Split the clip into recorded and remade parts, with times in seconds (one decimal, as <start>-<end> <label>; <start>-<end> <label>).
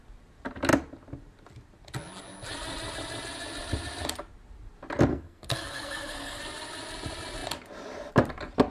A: 0.0-5.1 recorded; 5.1-6.4 remade; 6.4-8.7 recorded